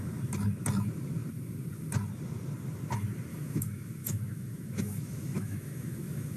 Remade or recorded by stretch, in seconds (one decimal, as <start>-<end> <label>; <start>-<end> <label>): 0.0-3.3 recorded; 3.3-6.4 remade